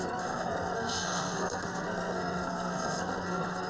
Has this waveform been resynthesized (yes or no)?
yes